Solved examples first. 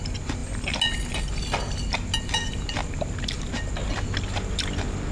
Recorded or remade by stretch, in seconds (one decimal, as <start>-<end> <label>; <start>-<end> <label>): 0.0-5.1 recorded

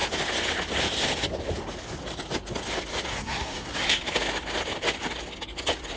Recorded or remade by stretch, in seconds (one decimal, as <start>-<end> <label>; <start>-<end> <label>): 0.0-3.1 recorded; 3.1-4.0 remade; 4.0-6.0 recorded

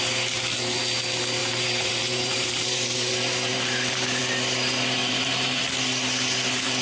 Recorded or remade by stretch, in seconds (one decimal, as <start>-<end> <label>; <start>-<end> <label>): 0.0-1.4 recorded; 1.4-3.1 remade; 3.1-3.5 recorded; 3.5-4.2 remade; 4.2-5.0 recorded; 5.0-5.6 remade; 5.6-6.8 recorded

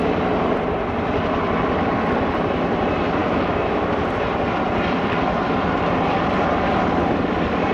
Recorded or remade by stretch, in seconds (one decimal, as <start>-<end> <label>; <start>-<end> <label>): 0.0-3.2 recorded; 3.2-3.9 remade; 3.9-7.7 recorded

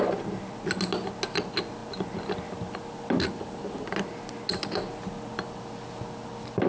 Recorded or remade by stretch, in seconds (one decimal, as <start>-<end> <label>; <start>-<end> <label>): 0.0-6.7 recorded